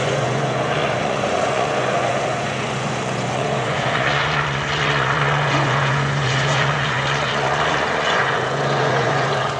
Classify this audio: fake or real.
fake